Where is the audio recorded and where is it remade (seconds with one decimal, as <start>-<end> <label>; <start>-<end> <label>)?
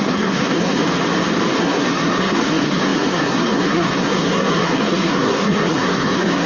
0.0-0.8 remade; 0.8-1.6 recorded; 1.6-6.5 remade